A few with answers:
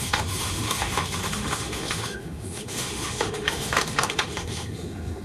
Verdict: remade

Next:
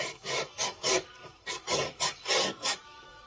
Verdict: remade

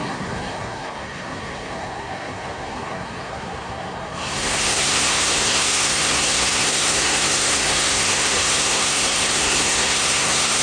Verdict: remade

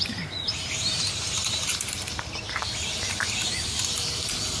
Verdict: remade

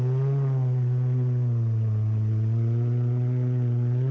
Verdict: recorded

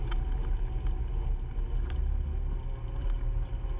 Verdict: recorded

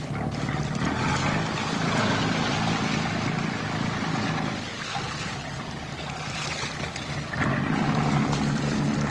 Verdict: recorded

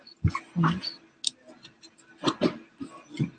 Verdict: recorded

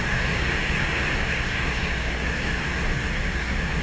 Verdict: remade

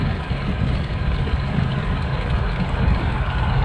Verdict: remade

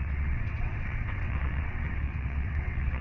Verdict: remade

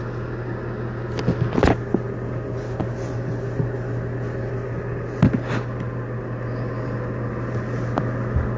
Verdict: recorded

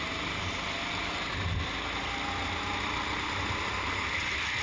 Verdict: recorded